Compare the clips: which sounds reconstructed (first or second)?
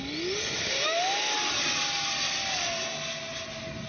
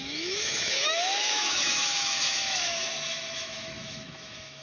second